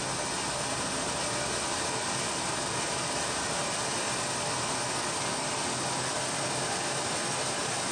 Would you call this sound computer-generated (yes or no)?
no